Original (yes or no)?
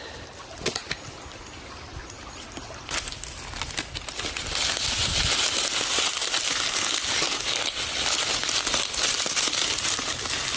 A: yes